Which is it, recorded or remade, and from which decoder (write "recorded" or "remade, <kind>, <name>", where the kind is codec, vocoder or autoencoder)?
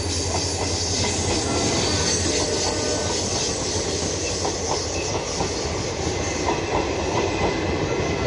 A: recorded